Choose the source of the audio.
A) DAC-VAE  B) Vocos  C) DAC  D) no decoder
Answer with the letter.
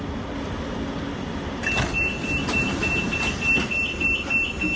D